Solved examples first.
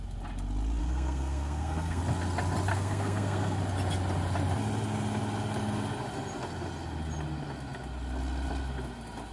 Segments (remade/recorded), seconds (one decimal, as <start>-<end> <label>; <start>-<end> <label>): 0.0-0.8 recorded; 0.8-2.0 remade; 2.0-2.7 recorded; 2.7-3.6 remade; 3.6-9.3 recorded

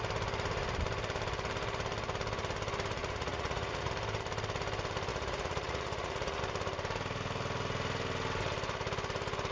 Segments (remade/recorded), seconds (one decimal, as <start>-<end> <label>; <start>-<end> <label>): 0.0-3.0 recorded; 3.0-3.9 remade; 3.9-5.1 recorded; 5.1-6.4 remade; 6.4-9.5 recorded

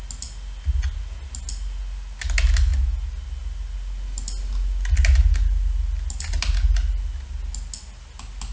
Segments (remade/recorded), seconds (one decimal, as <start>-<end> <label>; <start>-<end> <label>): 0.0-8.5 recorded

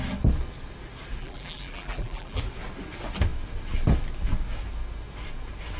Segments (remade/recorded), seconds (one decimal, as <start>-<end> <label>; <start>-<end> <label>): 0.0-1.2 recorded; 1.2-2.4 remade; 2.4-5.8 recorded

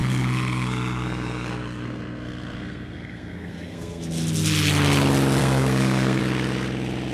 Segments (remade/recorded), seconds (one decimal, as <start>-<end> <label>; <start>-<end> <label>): 0.0-4.0 remade; 4.0-5.4 recorded; 5.4-6.2 remade; 6.2-7.1 recorded

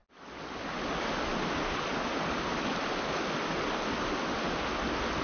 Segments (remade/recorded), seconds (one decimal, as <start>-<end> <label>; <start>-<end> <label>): 0.0-5.2 recorded

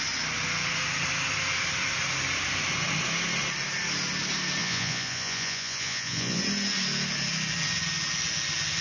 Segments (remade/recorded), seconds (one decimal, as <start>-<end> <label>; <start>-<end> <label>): 0.0-4.6 recorded; 4.6-6.4 remade; 6.4-8.8 recorded

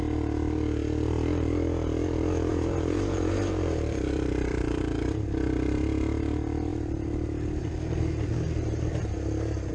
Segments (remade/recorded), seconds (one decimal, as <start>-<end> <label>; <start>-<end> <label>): 0.0-2.5 recorded; 2.5-4.8 remade; 4.8-9.7 recorded